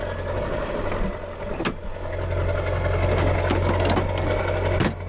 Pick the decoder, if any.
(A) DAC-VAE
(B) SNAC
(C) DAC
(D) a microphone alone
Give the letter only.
D